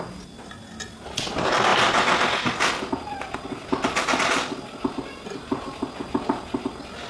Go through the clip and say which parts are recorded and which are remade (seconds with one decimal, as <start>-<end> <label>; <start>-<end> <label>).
0.0-7.1 recorded